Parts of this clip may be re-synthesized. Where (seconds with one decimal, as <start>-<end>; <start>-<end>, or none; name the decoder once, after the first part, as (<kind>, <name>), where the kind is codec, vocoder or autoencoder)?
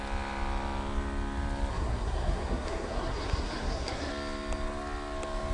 1.7-4.1 (codec, SNAC)